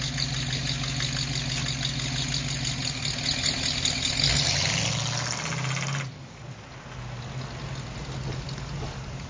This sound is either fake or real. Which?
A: real